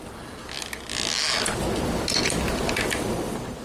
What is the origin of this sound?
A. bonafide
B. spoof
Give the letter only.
A